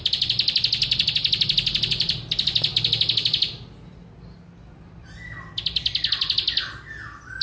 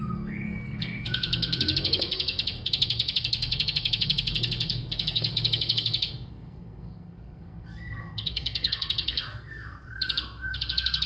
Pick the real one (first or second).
first